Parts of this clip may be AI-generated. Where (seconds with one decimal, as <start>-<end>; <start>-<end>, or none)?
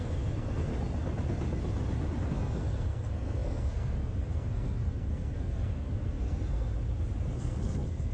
0.0-0.7; 2.3-6.7; 7.3-8.1